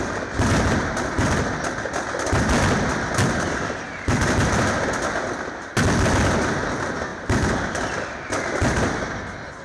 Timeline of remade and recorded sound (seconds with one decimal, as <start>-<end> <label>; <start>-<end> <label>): 0.0-9.6 recorded